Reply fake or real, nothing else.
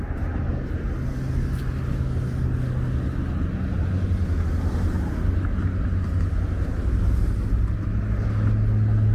real